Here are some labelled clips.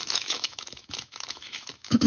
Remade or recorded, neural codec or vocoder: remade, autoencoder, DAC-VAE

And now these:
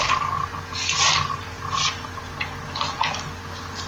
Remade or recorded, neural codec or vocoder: recorded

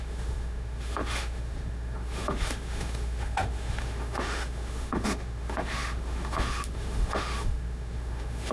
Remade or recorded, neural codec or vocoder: remade, autoencoder, DAC-VAE